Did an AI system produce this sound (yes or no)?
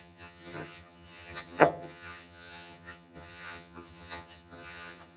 yes